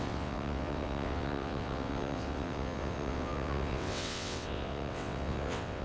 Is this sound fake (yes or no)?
yes